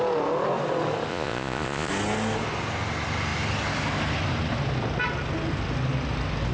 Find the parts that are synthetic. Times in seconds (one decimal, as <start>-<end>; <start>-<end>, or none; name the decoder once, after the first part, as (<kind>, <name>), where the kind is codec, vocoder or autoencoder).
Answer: 1.1-1.9 (vocoder, Vocos)